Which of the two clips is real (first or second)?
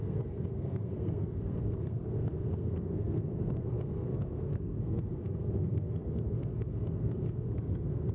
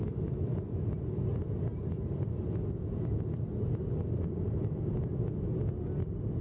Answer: second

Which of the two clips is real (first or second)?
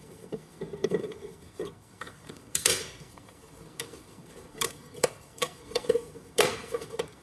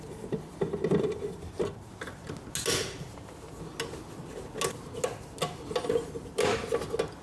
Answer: second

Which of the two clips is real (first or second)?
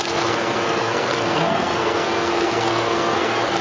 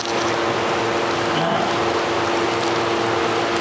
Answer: second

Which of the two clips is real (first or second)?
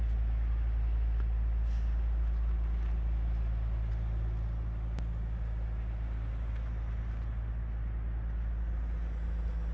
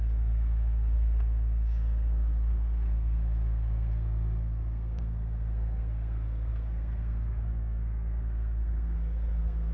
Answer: first